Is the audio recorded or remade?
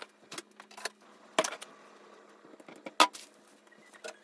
recorded